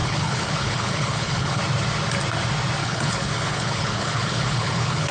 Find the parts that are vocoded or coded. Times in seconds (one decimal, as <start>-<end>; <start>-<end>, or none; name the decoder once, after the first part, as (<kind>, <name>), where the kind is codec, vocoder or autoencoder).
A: 0.0-1.6 (codec, HILCodec); 2.8-5.1

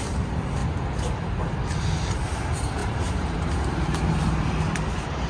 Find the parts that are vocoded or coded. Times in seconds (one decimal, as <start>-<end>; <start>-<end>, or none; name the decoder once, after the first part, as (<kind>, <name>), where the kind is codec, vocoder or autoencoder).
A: 0.0-0.6 (vocoder, BigVGAN v2); 1.8-5.3